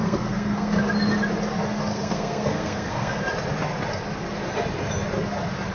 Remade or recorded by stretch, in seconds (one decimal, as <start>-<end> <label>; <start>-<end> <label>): 0.0-0.8 remade; 0.8-1.9 recorded; 1.9-3.2 remade; 3.2-5.7 recorded